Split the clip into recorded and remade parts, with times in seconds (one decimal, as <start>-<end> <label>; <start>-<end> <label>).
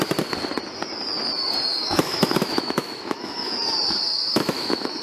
0.0-1.7 recorded; 1.7-3.5 remade; 3.5-4.3 recorded; 4.3-5.0 remade